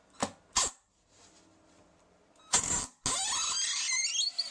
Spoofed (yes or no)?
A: no